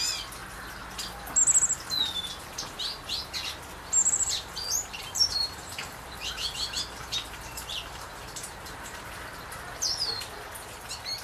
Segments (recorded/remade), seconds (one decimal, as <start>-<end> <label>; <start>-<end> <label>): 0.0-4.0 recorded; 4.0-9.1 remade; 9.1-11.2 recorded